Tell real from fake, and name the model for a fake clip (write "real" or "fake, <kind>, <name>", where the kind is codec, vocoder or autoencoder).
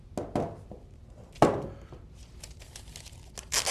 real